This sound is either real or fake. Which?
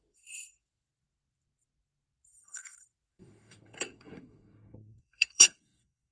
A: fake